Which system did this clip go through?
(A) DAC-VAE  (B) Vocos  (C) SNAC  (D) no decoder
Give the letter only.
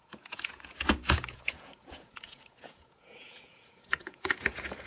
B